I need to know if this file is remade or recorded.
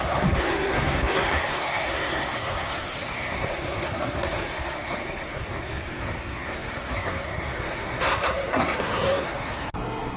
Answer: remade